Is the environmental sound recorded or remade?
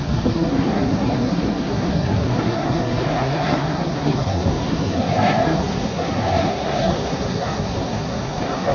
remade